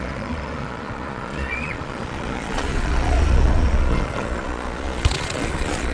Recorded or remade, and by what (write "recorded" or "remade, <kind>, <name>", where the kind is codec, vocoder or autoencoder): remade, vocoder, Vocos